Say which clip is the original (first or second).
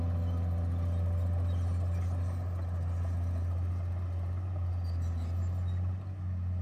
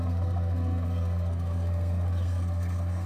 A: first